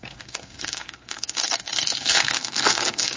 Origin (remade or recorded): remade